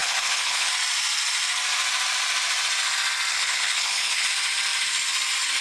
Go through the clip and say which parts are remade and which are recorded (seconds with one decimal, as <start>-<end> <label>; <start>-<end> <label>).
0.0-0.7 remade; 0.7-3.3 recorded; 3.3-4.3 remade; 4.3-5.6 recorded

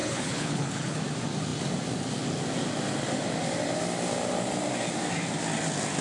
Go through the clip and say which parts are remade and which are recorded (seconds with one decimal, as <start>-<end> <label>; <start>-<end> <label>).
0.0-1.0 remade; 1.0-6.0 recorded

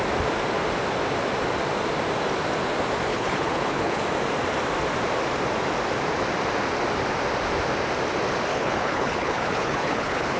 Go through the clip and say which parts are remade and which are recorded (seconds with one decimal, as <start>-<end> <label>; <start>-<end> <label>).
0.0-3.1 recorded; 3.1-4.0 remade; 4.0-8.5 recorded; 8.5-10.4 remade

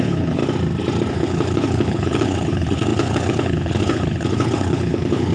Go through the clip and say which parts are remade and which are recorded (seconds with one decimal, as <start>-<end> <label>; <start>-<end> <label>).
0.0-0.4 remade; 0.4-1.1 recorded; 1.1-5.3 remade

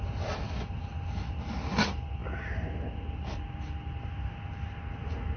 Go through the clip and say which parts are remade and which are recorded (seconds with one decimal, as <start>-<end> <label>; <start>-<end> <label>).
0.0-5.4 recorded

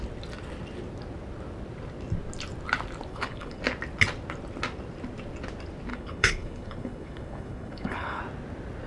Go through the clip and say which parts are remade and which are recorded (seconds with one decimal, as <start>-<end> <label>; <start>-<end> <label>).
0.0-3.1 recorded; 3.1-3.6 remade; 3.6-5.9 recorded; 5.9-8.2 remade; 8.2-8.9 recorded